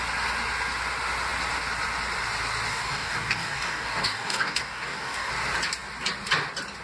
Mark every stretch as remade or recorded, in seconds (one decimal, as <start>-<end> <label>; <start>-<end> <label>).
0.0-2.7 recorded; 2.7-5.3 remade; 5.3-6.8 recorded